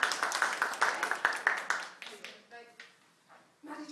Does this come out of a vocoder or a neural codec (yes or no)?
no